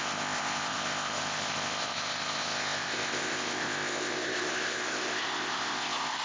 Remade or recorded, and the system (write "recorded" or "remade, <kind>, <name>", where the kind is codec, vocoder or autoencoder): remade, codec, ZipCodec